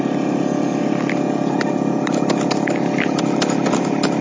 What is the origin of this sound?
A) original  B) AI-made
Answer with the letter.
A